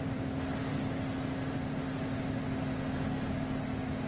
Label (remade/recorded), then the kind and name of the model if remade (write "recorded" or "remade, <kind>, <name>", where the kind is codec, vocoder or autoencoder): recorded